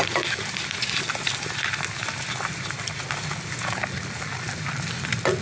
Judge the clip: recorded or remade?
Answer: recorded